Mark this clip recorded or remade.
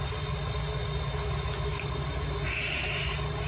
recorded